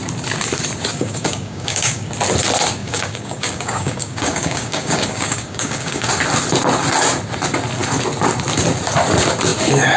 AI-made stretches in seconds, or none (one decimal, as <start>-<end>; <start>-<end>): 0.9-2.1; 2.8-6.1